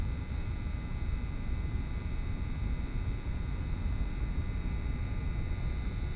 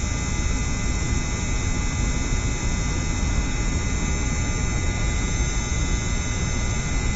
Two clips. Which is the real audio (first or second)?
second